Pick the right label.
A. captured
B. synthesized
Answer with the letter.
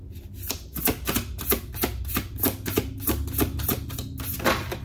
A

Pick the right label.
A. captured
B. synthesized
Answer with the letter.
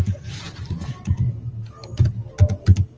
A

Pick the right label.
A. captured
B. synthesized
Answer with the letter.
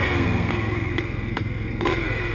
B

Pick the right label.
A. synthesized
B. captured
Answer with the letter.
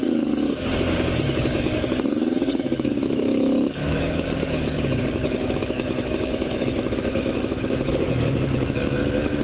A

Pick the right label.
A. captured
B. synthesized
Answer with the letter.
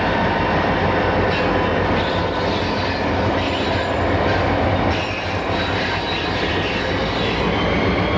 A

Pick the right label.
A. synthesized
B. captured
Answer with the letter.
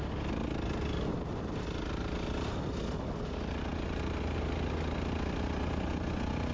B